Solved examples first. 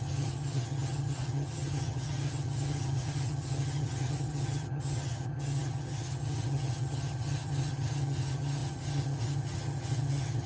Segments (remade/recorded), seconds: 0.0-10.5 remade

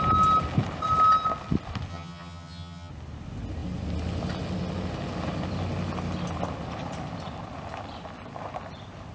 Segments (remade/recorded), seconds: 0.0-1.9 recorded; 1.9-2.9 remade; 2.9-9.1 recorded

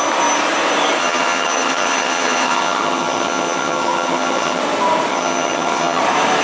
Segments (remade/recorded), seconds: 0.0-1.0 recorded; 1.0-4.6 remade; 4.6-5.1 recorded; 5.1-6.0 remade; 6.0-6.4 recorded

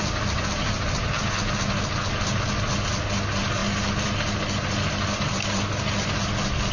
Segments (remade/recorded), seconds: 0.0-6.7 recorded

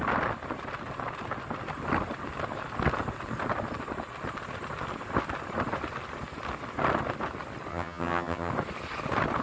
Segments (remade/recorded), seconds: 0.0-7.7 recorded; 7.7-8.5 remade; 8.5-9.4 recorded